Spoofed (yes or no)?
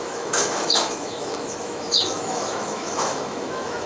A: yes